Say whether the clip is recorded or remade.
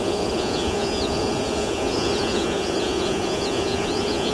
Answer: remade